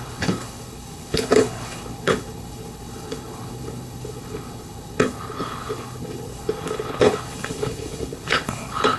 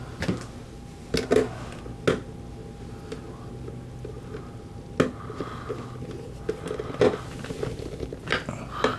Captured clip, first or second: second